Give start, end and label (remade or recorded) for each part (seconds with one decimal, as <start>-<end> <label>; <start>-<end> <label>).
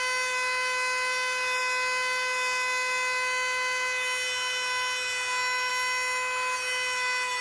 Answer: 0.0-7.4 recorded